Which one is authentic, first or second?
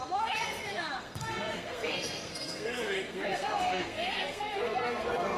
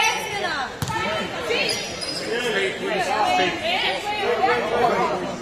second